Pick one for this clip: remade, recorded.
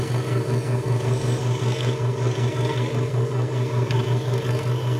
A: remade